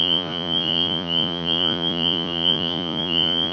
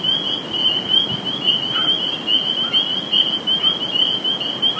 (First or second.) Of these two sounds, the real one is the second